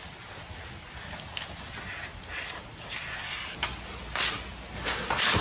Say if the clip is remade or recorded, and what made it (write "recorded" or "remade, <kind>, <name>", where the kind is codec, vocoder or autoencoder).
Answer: recorded